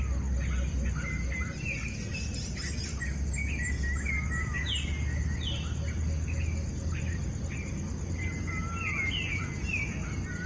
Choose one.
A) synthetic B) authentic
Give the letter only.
B